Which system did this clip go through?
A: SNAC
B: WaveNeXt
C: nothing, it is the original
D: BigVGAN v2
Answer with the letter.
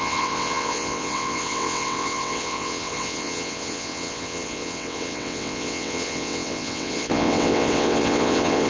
B